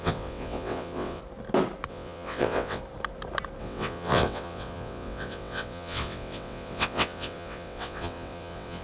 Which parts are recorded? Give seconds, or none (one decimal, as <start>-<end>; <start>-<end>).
1.2-1.9; 2.8-3.6